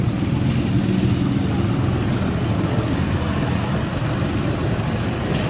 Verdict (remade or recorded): recorded